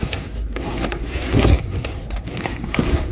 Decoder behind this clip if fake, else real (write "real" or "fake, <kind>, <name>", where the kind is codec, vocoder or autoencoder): fake, codec, SNAC